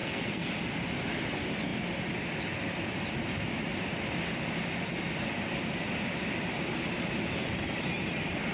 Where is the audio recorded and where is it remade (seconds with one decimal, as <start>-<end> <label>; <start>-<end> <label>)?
0.0-0.5 remade; 0.5-8.5 recorded